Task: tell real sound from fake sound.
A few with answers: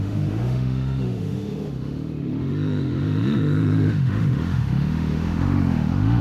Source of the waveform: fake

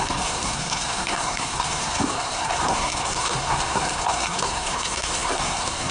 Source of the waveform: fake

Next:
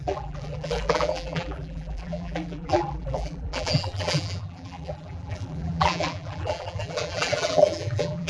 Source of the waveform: fake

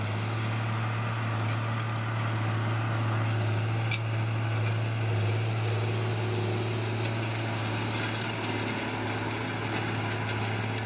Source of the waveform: real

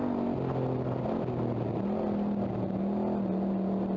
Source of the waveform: real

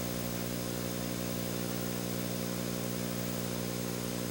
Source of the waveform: real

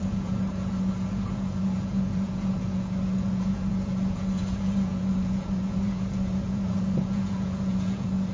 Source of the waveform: fake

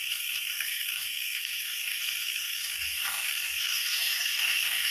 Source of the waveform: fake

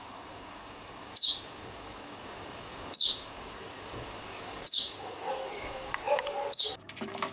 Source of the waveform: fake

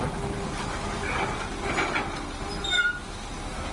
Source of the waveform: real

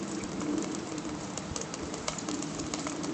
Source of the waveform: fake